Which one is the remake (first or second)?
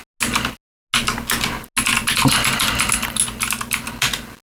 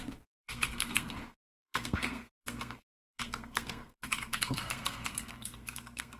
second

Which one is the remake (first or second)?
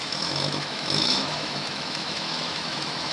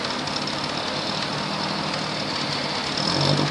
first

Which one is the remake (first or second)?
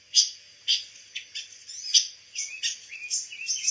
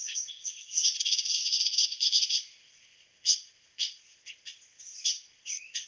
second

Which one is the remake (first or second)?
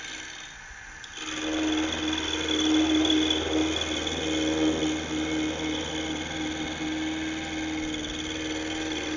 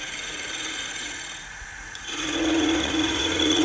second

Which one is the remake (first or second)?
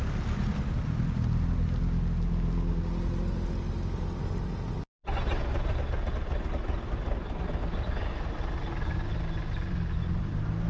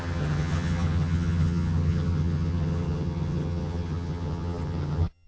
second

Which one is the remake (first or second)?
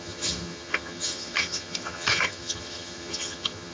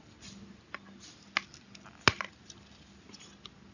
first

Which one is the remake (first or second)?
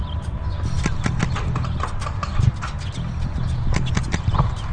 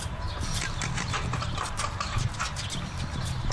second